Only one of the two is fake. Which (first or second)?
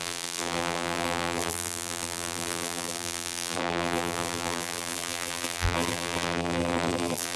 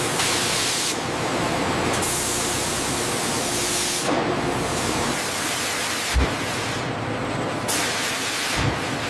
first